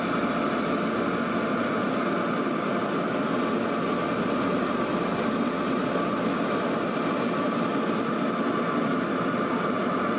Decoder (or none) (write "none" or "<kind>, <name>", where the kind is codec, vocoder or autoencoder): none